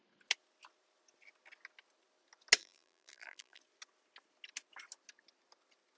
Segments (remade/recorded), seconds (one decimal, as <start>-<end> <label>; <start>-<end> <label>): 0.0-2.6 recorded; 2.6-3.6 remade; 3.6-6.0 recorded